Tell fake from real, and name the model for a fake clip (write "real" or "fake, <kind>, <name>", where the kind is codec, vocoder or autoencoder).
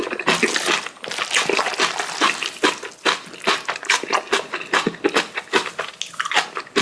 real